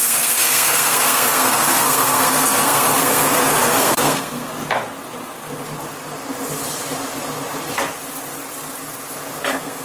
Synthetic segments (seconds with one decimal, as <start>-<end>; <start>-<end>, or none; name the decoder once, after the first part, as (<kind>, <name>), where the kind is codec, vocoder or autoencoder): 0.0-4.5 (codec, SNAC); 9.4-9.8